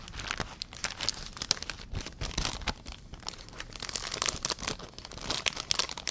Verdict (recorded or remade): recorded